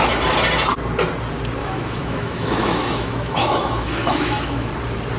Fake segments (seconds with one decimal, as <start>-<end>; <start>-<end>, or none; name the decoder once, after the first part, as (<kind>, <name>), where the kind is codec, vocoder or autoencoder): 1.6-4.7 (autoencoder, DAC-VAE)